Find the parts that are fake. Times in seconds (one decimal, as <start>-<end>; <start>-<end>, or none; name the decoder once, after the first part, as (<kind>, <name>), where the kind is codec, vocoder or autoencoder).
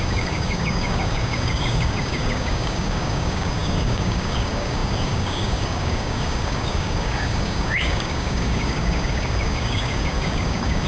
0.0-10.9 (codec, DAC)